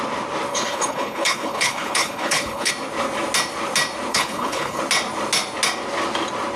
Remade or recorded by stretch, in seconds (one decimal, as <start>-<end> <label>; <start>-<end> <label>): 0.0-0.5 recorded; 0.5-2.7 remade; 2.7-4.1 recorded; 4.1-4.8 remade; 4.8-6.6 recorded